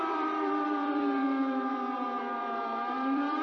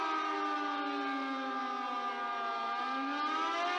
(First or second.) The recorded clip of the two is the second